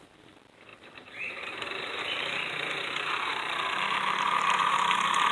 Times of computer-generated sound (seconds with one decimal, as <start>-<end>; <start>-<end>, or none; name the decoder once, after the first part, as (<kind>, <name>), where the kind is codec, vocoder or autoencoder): 0.0-3.3 (vocoder, BigVGAN v2); 3.9-5.3